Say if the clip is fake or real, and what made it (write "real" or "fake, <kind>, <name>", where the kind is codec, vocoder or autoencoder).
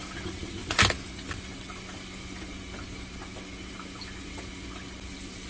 real